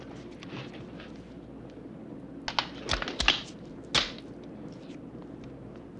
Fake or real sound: real